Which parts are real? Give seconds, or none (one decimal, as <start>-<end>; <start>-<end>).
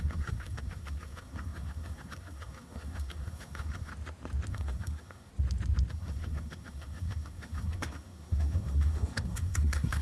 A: 3.9-4.5; 5.3-5.9